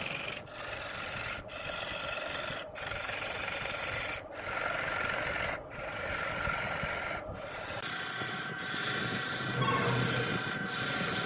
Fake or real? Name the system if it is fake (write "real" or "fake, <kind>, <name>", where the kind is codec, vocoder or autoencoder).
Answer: real